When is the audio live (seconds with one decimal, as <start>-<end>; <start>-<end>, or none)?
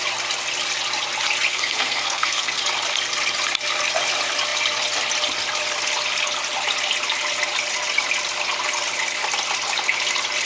0.0-1.5; 2.6-10.5